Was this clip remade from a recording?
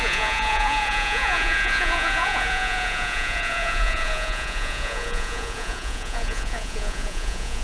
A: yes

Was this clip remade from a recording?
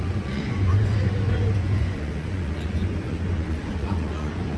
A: yes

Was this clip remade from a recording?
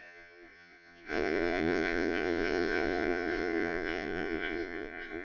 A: yes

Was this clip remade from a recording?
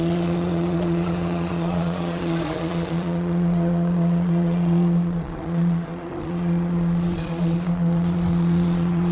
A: yes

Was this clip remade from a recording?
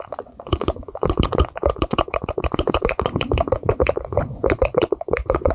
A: yes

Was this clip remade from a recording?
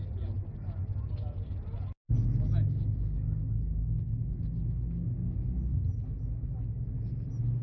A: no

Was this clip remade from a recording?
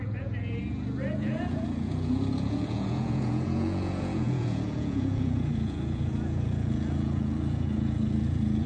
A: yes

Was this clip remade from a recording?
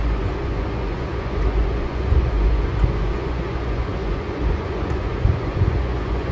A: yes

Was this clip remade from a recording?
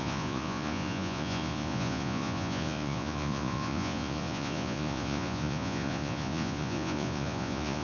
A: yes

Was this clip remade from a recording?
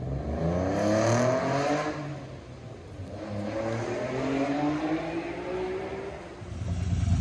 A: no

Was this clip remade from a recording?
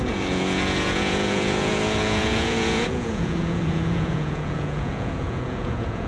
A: yes